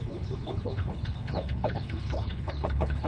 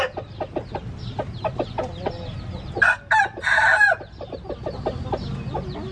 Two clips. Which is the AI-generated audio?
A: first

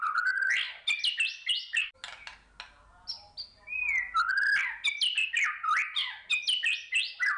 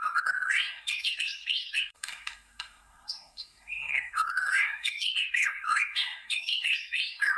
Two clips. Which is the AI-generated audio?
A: second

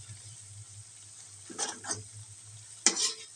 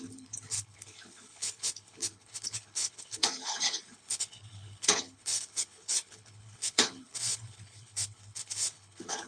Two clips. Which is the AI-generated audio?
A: second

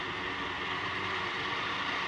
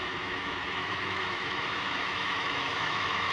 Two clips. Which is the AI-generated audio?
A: second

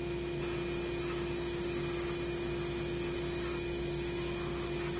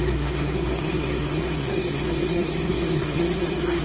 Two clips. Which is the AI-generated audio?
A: second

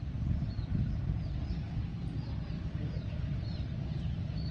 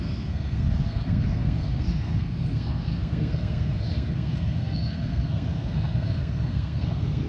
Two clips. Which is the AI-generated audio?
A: second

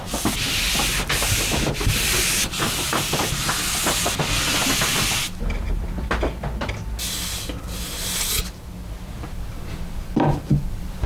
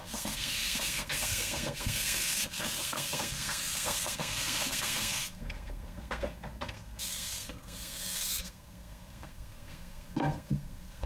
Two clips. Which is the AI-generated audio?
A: second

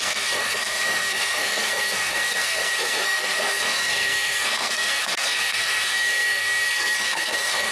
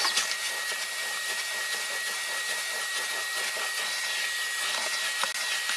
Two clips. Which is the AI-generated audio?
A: first